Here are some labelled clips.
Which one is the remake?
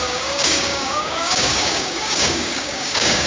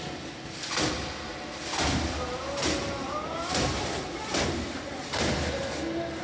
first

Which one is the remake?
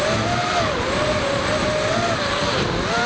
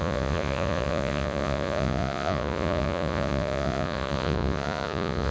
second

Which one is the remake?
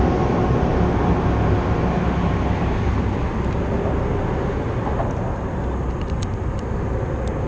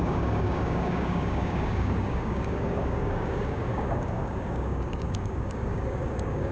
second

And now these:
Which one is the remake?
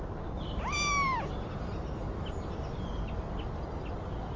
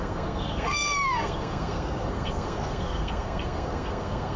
second